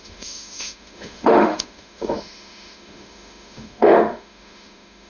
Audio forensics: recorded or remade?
remade